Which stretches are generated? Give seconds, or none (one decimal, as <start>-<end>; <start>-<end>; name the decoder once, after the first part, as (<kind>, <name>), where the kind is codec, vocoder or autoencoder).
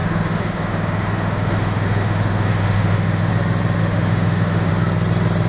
0.0-3.3 (autoencoder, DAC-VAE); 3.8-4.7